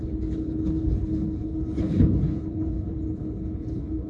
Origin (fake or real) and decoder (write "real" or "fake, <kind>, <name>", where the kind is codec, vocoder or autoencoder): fake, codec, HILCodec